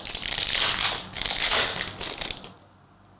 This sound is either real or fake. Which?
real